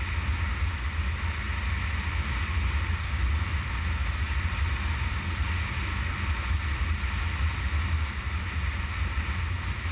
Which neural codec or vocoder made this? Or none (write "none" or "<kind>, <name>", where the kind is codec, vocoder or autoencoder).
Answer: none